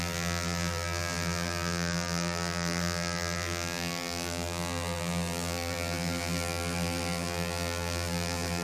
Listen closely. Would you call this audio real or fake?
fake